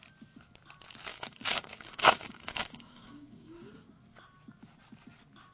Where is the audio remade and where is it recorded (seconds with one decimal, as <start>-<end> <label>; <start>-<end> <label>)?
0.0-1.1 recorded; 1.1-3.7 remade; 3.7-5.5 recorded